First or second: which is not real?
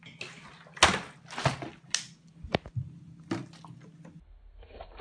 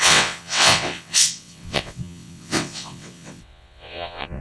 second